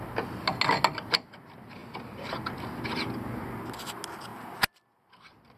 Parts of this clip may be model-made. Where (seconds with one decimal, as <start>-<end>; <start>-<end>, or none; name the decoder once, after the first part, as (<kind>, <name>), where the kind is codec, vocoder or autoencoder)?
none

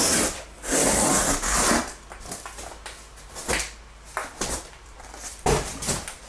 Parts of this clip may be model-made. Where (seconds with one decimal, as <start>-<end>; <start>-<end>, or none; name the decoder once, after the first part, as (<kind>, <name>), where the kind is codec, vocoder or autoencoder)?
0.0-1.3 (vocoder, BigVGAN v2); 4.2-6.3

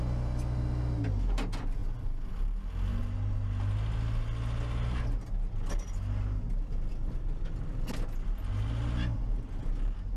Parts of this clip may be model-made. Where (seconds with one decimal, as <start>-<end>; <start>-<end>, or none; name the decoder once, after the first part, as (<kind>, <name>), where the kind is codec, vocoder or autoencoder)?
none

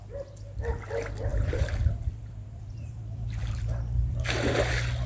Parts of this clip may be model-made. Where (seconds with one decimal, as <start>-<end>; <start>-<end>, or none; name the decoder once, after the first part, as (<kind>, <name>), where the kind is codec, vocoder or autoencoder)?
1.3-1.8 (vocoder, BigVGAN v2); 2.2-4.1